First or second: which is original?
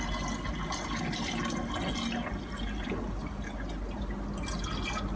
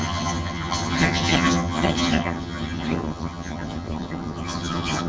first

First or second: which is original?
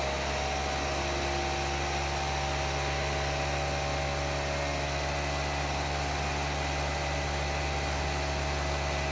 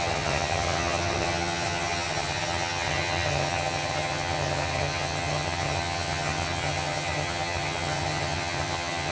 first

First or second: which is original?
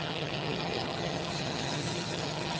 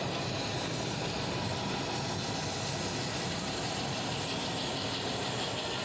second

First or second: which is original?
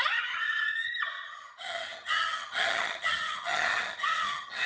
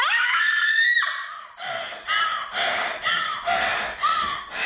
second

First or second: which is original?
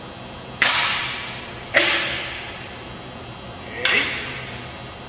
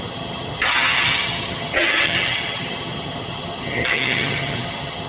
first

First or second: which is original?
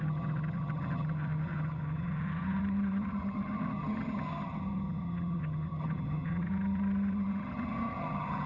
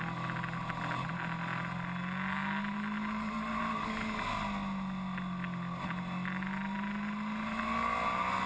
second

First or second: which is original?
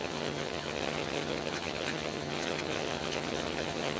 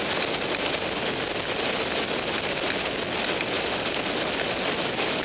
second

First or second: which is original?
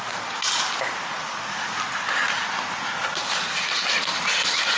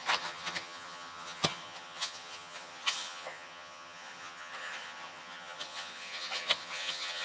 first